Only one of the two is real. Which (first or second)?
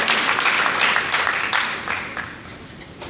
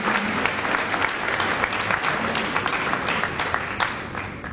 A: second